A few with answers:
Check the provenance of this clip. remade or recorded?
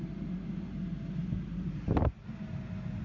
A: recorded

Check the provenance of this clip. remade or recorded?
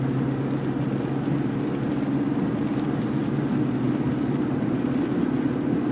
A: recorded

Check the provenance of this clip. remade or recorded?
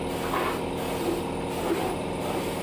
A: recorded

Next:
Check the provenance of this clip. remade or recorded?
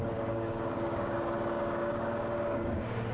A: remade